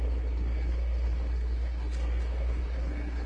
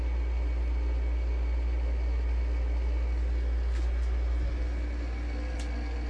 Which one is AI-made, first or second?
first